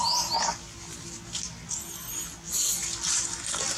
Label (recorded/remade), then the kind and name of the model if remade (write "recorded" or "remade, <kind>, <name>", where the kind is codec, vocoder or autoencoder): recorded